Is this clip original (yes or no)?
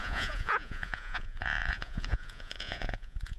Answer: no